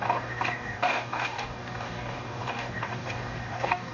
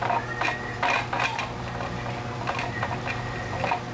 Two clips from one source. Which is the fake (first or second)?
first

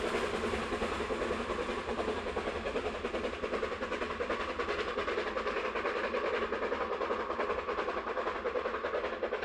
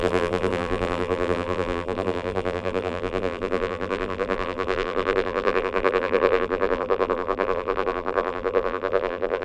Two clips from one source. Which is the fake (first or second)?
second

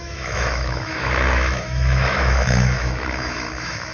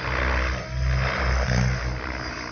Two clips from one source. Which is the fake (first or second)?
first